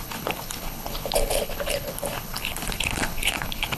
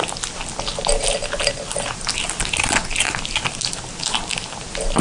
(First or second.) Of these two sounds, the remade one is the first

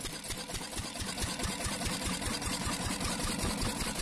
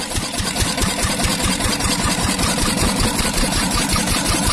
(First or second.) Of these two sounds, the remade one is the second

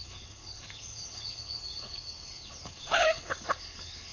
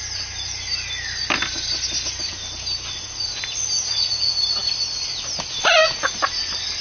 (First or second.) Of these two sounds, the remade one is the first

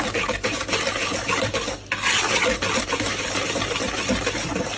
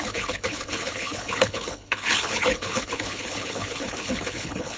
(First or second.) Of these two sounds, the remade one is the second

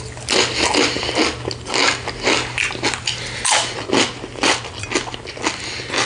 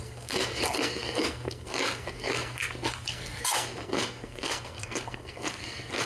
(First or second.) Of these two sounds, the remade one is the second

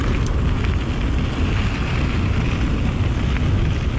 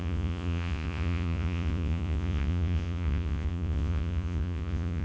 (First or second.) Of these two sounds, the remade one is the second